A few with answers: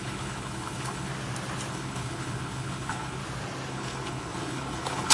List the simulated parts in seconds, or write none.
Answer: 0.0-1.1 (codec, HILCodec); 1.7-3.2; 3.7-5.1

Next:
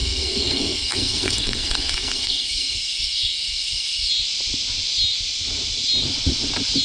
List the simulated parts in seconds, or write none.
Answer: 0.0-4.1 (codec, SNAC)

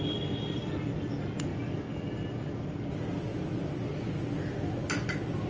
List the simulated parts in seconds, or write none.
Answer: none